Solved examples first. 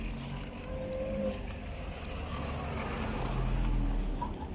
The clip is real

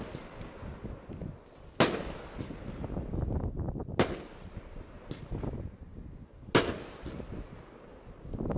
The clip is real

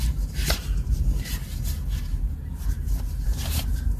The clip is fake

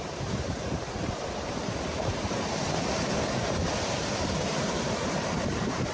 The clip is fake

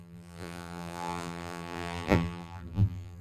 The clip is fake